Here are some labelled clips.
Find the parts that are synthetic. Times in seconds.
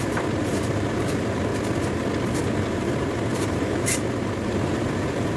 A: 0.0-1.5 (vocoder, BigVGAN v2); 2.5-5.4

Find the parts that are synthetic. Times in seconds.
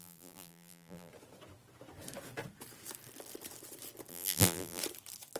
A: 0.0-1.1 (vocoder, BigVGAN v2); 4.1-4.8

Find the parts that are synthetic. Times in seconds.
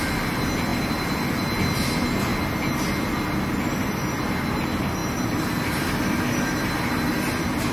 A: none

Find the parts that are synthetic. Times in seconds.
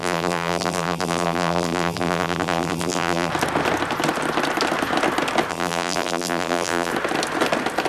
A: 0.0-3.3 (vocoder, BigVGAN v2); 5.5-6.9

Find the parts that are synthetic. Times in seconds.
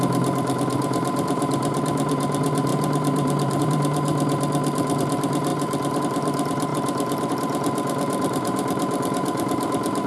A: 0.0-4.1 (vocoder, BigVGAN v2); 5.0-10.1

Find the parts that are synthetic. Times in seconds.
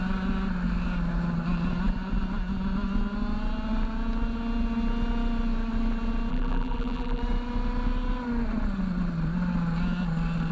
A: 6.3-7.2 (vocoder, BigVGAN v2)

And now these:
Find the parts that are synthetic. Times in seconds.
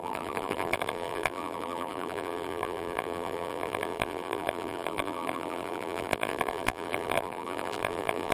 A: 0.0-8.3 (vocoder, BigVGAN v2)